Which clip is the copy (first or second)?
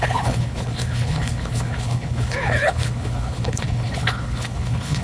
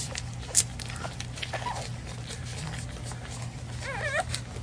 first